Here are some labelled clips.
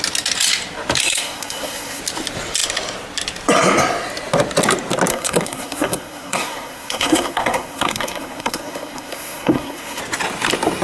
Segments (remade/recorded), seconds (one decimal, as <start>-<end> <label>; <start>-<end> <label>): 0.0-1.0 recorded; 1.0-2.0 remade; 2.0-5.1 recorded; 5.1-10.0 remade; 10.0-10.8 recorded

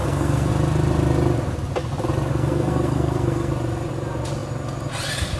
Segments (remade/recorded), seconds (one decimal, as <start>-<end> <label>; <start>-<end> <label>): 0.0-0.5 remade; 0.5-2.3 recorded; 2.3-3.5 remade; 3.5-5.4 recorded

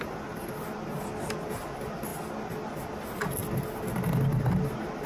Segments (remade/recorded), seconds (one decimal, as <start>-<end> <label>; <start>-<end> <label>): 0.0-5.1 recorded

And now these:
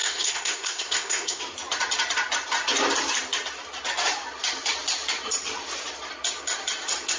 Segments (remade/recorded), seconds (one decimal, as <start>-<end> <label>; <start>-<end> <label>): 0.0-1.4 remade; 1.4-7.2 recorded

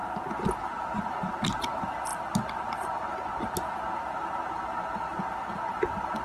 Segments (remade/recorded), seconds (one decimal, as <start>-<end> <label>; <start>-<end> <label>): 0.0-6.2 recorded

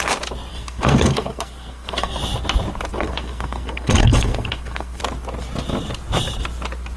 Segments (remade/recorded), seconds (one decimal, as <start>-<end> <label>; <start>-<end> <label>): 0.0-0.5 recorded; 0.5-2.2 remade; 2.2-2.9 recorded; 2.9-5.0 remade; 5.0-7.0 recorded